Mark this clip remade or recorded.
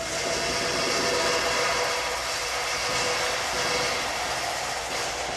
recorded